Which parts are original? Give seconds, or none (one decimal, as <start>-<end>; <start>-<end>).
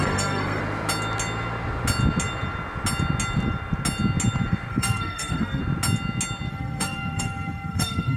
0.6-4.7; 5.6-6.5